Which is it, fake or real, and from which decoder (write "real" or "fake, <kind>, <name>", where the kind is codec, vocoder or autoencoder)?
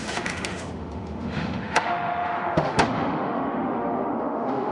fake, autoencoder, DAC-VAE